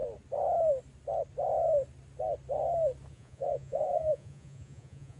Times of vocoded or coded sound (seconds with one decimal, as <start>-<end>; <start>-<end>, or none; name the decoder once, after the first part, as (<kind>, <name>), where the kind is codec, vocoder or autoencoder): 3.1-5.2 (vocoder, Vocos)